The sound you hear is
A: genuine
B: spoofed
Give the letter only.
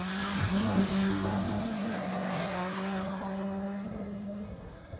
B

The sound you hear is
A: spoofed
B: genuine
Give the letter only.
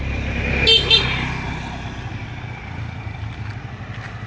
B